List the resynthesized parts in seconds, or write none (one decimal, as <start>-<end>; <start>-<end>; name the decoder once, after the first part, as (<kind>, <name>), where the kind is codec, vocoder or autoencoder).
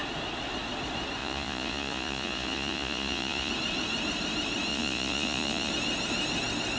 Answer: 1.2-3.5 (vocoder, Vocos); 4.7-5.7